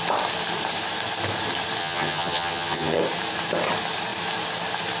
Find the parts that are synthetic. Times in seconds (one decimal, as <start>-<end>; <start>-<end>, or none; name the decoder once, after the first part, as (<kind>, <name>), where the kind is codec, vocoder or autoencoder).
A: 1.8-3.0 (vocoder, HiFi-GAN)